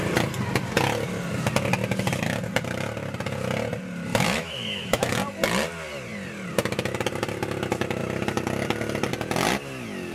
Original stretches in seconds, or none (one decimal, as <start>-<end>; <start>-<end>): 0.0-4.1; 5.1-10.1